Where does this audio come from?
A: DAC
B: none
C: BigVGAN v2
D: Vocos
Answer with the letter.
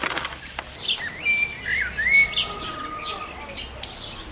B